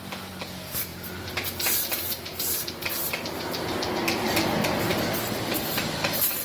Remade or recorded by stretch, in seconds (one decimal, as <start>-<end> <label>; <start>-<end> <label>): 0.0-6.4 recorded